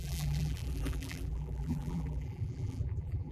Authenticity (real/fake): fake